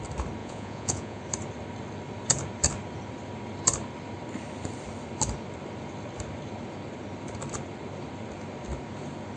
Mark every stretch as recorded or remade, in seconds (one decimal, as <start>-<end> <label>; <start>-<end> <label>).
0.0-0.4 recorded; 0.4-1.2 remade; 1.2-9.4 recorded